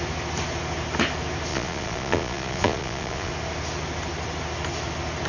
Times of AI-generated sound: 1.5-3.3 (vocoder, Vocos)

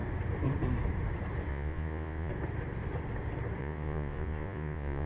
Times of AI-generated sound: 1.5-2.3 (vocoder, Vocos); 3.6-5.1

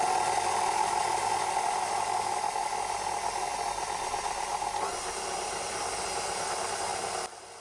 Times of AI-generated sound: none

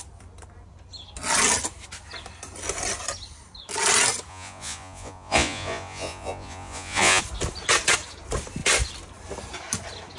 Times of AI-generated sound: 4.3-7.2 (vocoder, Vocos)

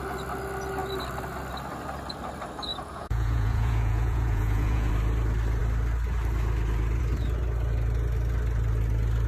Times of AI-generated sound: 2.7-4.9 (vocoder, Vocos)

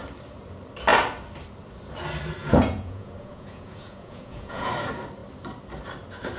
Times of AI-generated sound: 2.4-4.7 (vocoder, Vocos)

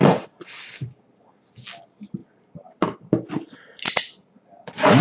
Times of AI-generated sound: none